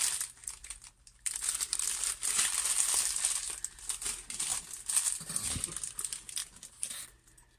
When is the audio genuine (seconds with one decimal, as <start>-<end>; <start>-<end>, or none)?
0.0-7.6